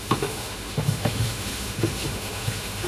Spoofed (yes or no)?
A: yes